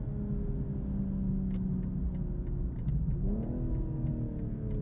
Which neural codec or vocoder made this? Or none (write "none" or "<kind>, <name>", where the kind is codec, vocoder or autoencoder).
none